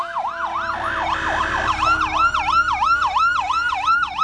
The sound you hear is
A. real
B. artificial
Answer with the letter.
A